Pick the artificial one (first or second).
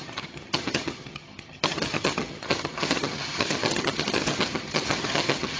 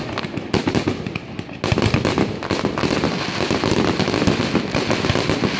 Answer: first